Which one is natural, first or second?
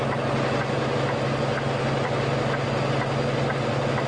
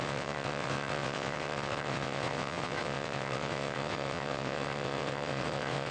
first